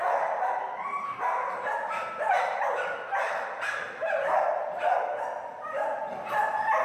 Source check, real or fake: real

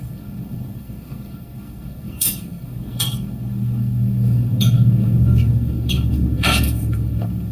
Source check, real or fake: fake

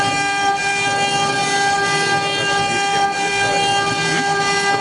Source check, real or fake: real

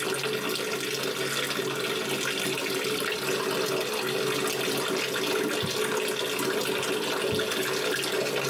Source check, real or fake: real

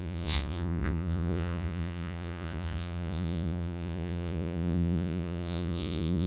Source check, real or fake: fake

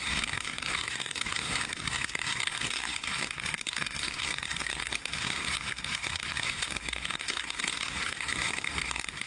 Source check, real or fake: fake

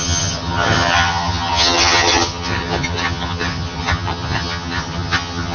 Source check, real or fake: fake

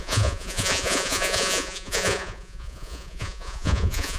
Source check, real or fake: fake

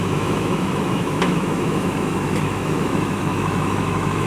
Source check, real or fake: fake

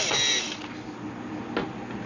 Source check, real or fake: real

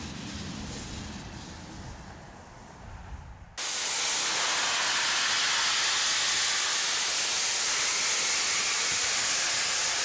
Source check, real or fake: real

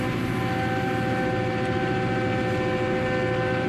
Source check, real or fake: real